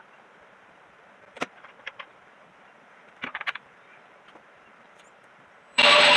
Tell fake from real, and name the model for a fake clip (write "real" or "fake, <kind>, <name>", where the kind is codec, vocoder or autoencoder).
fake, vocoder, BigVGAN v2